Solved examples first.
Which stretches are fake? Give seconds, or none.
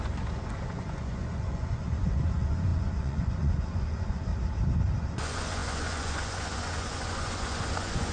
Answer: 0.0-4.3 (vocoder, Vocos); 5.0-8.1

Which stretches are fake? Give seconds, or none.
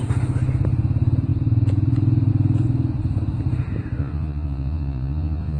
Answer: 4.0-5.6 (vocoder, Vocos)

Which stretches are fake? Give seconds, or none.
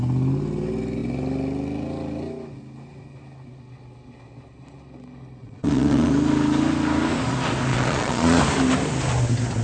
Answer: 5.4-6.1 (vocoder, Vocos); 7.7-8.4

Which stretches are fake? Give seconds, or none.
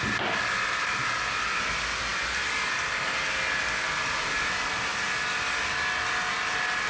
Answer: none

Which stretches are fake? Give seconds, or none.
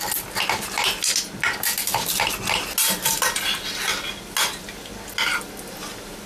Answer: none